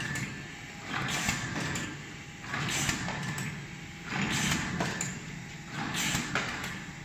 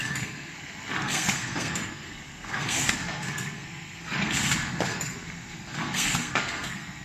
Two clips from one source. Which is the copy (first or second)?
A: second